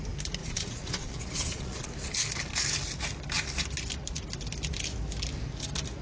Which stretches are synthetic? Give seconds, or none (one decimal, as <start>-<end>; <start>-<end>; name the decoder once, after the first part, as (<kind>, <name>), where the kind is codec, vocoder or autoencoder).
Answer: 0.4-1.9 (vocoder, Vocos)